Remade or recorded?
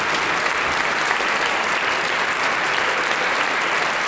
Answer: recorded